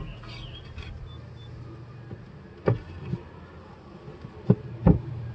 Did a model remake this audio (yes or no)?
no